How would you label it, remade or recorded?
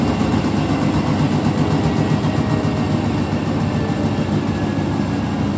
recorded